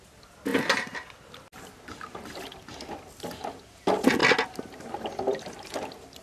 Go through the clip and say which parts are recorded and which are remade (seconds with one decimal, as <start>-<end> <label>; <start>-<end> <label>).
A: 0.0-6.2 recorded